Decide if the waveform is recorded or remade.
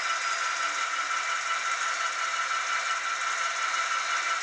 recorded